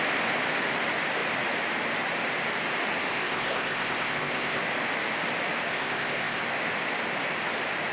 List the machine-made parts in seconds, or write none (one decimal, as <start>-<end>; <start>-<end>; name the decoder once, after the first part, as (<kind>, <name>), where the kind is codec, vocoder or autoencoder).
3.1-4.6 (codec, ZipCodec); 5.7-6.4